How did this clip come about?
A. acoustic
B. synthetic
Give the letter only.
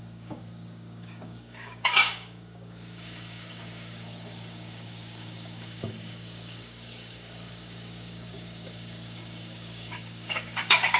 B